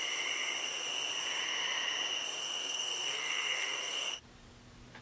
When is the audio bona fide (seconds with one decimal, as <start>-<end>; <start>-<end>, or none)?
0.0-2.4; 4.1-5.0